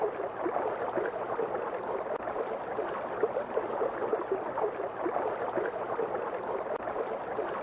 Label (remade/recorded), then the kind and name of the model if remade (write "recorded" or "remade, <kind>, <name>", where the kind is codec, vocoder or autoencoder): recorded